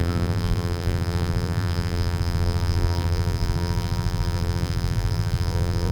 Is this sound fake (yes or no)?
yes